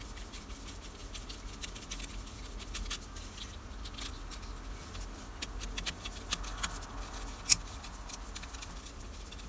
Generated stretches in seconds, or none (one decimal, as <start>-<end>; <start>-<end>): none

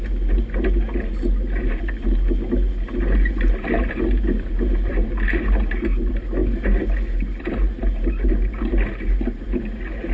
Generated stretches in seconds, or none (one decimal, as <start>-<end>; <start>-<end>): none

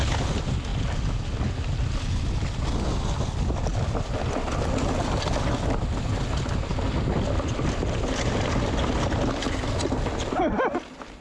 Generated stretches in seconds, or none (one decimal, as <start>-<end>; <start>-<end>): none

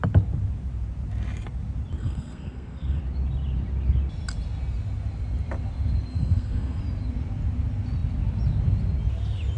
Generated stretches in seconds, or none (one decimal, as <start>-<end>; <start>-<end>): 2.0-3.0; 6.1-6.8